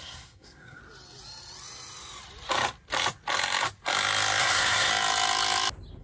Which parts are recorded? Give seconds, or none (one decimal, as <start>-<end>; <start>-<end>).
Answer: 0.8-4.4; 4.9-6.0